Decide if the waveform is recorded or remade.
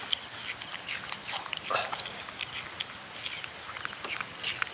recorded